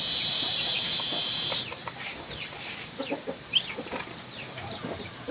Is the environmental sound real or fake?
fake